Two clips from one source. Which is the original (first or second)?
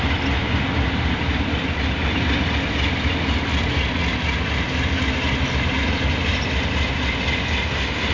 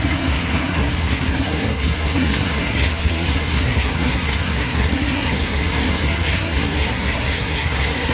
first